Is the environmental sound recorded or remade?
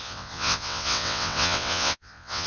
remade